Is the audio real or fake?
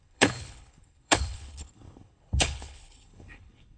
fake